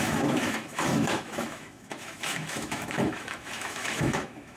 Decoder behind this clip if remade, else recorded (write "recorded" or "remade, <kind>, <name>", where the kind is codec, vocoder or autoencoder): remade, autoencoder, DAC-VAE